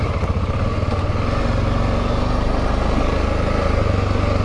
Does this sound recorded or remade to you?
recorded